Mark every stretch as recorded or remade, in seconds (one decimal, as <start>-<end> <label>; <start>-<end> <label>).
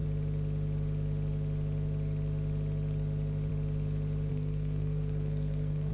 0.0-4.3 recorded; 4.3-5.9 remade